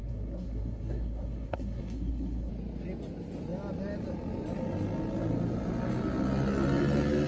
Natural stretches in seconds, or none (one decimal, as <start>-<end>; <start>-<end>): 2.5-7.3